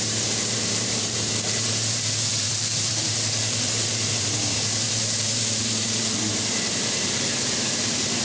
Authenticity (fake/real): fake